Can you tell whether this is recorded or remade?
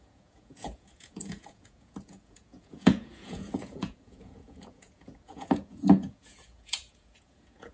remade